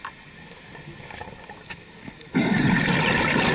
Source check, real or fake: real